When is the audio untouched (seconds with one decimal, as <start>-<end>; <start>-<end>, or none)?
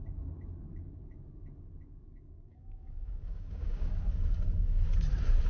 0.0-2.5; 3.9-5.5